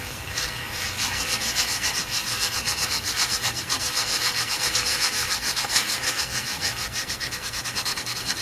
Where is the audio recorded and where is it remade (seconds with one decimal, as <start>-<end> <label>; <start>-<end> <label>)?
0.0-8.4 remade